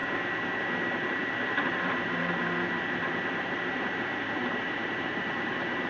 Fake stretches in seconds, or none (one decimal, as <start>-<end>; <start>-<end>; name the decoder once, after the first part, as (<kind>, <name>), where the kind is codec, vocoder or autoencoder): 0.0-5.9 (vocoder, BigVGAN v2)